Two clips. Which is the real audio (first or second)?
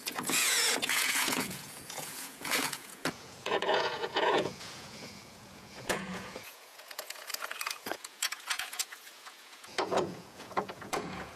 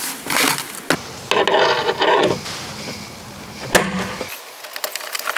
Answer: second